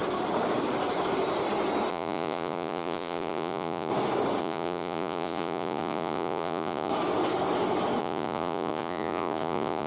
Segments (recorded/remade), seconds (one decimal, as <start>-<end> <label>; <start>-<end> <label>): 0.0-1.9 recorded; 1.9-3.9 remade; 3.9-4.4 recorded; 4.4-6.9 remade; 6.9-8.0 recorded; 8.0-9.9 remade